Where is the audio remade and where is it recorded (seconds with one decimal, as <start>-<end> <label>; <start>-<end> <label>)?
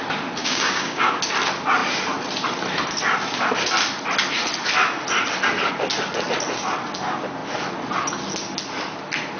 0.0-0.4 recorded; 0.4-1.2 remade; 1.2-9.4 recorded